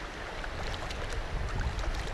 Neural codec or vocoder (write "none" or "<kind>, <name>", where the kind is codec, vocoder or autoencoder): none